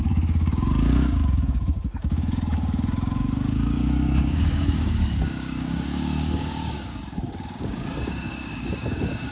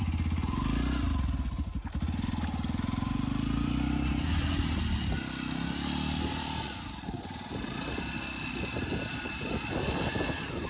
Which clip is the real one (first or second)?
second